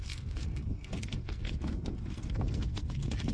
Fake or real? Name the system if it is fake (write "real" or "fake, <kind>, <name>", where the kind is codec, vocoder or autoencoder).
fake, codec, SNAC